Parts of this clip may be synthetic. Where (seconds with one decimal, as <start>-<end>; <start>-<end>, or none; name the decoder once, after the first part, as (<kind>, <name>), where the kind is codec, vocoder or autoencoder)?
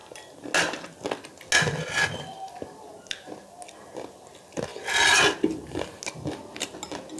none